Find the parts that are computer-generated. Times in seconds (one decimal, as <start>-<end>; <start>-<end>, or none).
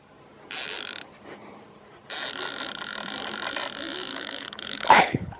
4.1-5.4